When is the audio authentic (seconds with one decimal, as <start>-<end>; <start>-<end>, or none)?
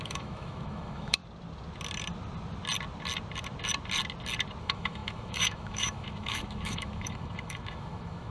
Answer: 1.2-4.6